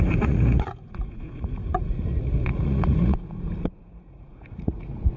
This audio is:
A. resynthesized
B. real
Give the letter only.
A